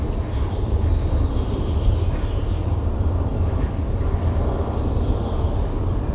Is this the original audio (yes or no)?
yes